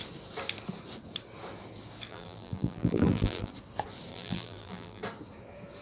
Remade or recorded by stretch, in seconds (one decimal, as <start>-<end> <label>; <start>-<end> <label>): 0.0-2.1 recorded; 2.1-3.5 remade; 3.5-4.1 recorded; 4.1-5.0 remade; 5.0-5.8 recorded